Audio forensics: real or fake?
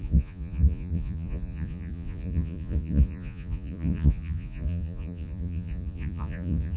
fake